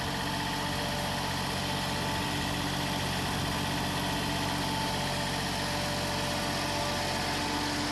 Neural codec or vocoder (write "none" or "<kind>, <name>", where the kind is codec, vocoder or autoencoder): none